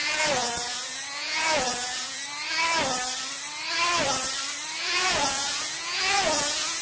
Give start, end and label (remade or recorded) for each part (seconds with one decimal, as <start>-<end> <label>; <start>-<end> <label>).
0.0-2.2 remade; 2.2-4.8 recorded; 4.8-6.8 remade